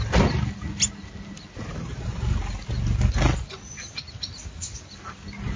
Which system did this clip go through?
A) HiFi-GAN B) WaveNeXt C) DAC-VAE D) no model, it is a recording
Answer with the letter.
D